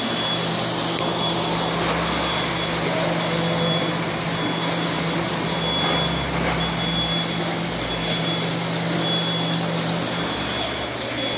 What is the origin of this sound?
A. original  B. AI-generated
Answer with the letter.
A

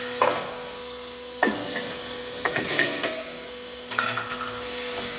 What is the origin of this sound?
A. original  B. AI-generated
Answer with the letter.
B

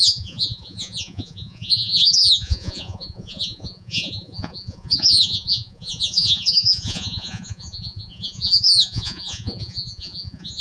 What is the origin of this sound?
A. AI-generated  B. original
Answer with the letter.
A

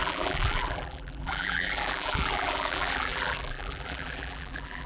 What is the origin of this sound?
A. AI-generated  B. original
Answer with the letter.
A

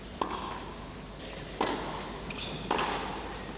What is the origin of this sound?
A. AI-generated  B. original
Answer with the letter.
B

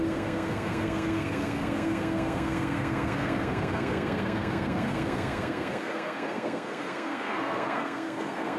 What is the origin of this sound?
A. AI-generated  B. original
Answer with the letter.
A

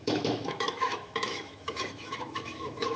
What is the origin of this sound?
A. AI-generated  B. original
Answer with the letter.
A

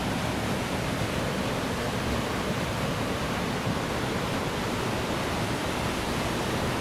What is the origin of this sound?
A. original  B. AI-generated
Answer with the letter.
A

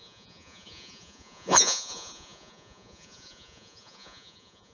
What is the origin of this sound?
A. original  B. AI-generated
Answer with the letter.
B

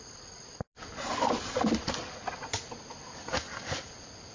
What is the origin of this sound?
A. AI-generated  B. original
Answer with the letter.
B